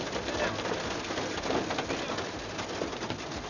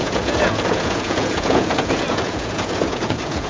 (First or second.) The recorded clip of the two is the first